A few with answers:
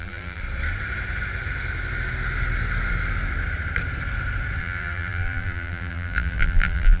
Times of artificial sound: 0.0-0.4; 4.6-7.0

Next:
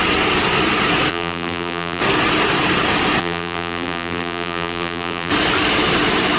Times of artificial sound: 1.1-2.0; 3.2-5.3

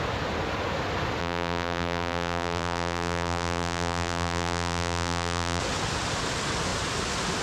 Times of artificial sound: 1.2-5.6

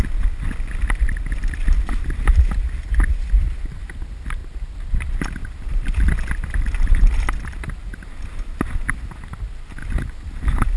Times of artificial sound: 5.4-9.3; 9.8-10.8

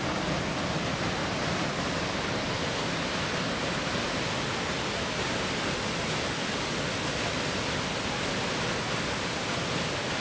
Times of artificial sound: 1.2-2.9

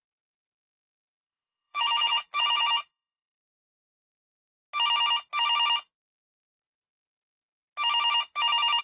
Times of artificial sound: 0.6-4.0